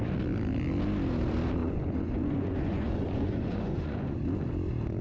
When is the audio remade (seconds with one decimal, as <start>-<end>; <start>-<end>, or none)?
1.6-4.2